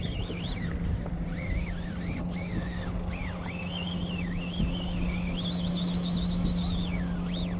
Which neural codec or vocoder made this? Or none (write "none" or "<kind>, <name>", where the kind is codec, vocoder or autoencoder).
none